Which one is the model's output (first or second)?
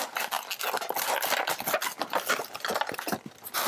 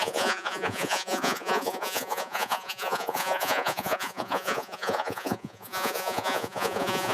second